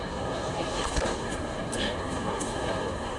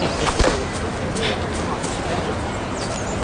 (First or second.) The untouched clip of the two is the second